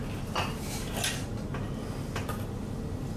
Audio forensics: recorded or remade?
recorded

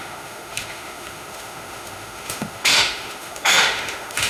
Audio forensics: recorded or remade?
remade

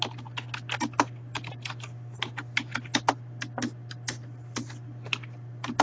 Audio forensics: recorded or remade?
recorded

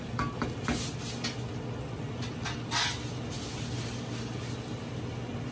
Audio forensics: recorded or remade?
recorded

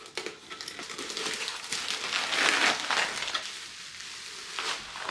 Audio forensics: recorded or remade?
recorded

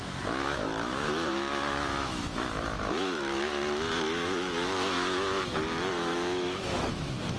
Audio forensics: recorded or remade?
remade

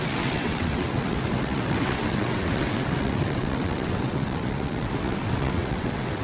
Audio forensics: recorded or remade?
remade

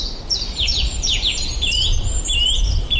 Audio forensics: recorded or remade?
remade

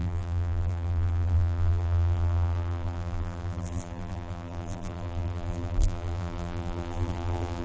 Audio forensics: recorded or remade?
remade